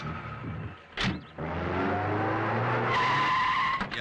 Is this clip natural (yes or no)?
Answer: yes